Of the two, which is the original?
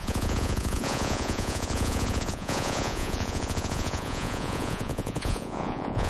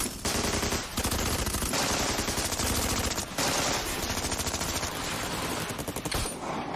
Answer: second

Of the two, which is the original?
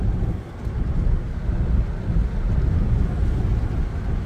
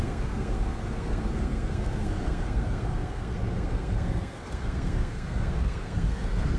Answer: first